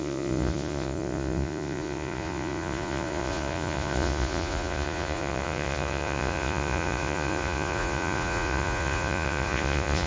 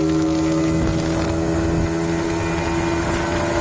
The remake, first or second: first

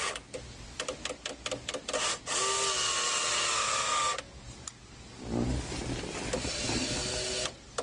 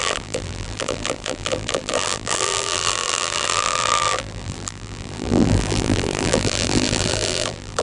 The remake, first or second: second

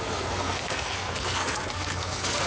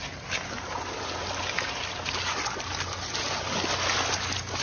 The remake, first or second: first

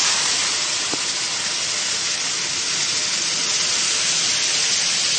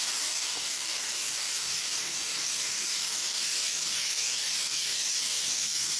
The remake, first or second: second